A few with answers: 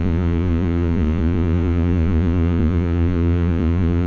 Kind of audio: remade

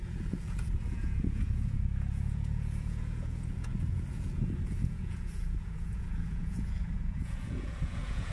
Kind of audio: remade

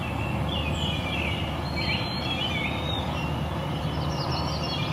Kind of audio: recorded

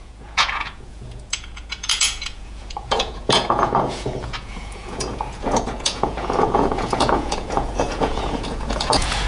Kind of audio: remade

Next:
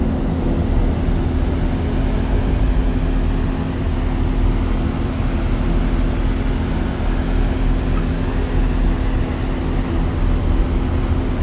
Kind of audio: recorded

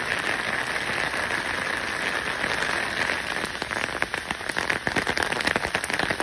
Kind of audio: recorded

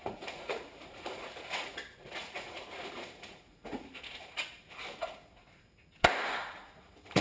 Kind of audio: remade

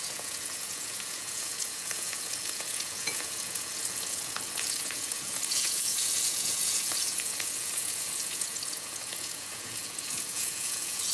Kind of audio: remade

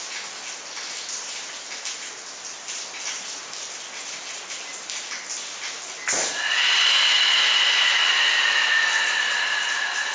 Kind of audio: recorded